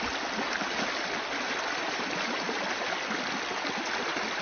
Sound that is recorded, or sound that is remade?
recorded